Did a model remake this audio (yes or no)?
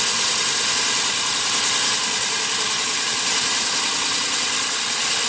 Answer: no